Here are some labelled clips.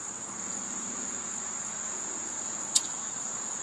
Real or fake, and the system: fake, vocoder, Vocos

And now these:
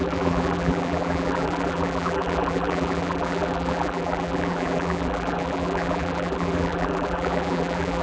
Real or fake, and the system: fake, vocoder, BigVGAN v2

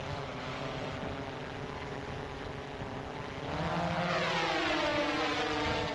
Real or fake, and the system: real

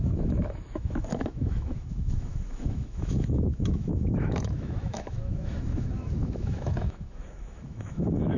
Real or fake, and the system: fake, autoencoder, DAC-VAE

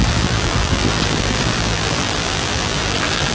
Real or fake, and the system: fake, vocoder, BigVGAN v2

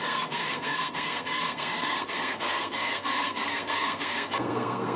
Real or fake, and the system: fake, codec, SNAC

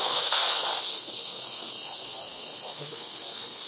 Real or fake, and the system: fake, codec, SNAC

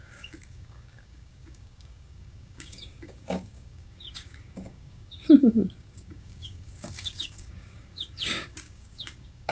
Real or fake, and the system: fake, codec, DAC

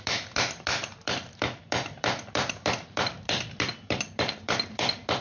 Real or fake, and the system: fake, vocoder, BigVGAN v2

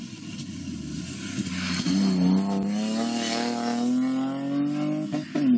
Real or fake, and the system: real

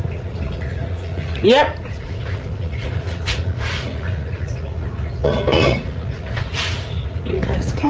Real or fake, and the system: fake, vocoder, Vocos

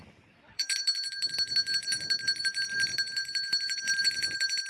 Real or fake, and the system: fake, vocoder, BigVGAN v2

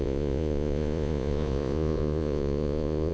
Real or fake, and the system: fake, vocoder, Vocos